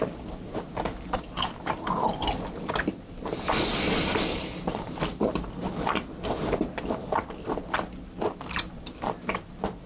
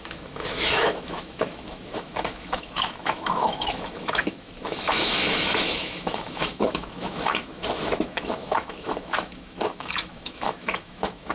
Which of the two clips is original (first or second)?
first